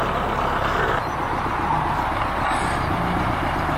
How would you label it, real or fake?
real